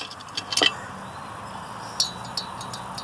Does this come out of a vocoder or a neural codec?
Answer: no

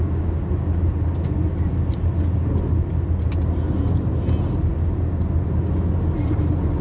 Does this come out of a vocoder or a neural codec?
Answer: no